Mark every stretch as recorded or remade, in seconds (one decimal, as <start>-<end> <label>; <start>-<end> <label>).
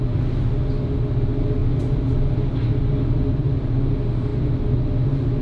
0.0-5.4 recorded